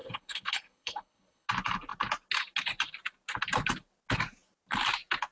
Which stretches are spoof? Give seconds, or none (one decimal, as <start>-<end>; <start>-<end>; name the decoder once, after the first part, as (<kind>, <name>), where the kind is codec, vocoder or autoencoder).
0.0-1.5 (codec, HILCodec)